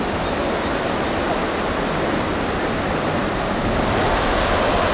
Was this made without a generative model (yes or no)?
yes